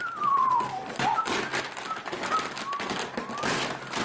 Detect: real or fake real